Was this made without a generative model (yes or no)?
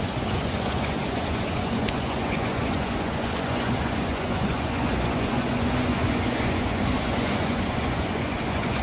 no